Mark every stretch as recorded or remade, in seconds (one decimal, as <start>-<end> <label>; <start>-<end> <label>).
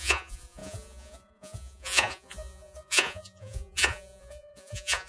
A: 0.0-5.1 remade